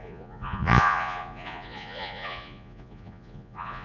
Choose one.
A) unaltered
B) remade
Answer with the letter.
B